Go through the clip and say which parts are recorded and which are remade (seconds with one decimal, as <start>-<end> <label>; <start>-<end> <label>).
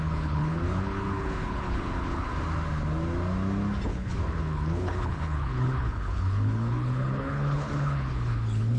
0.0-2.3 remade; 2.3-3.9 recorded; 3.9-8.8 remade